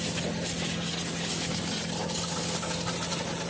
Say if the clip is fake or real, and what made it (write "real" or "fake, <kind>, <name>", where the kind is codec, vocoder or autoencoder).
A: real